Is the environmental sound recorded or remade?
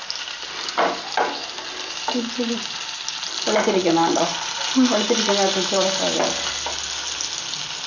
recorded